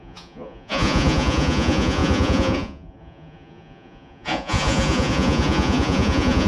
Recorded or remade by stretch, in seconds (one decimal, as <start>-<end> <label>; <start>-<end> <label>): 0.0-6.5 remade